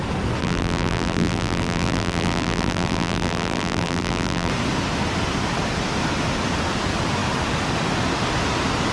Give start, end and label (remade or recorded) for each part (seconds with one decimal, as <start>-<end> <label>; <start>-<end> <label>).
0.0-0.4 recorded; 0.4-4.5 remade; 4.5-8.9 recorded